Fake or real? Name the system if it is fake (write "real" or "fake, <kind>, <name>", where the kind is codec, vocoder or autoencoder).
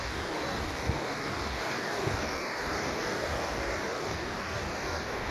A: fake, codec, DAC